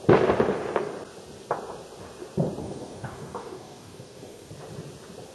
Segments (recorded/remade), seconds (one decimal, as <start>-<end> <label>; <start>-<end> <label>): 0.0-2.6 recorded; 2.6-4.5 remade; 4.5-5.3 recorded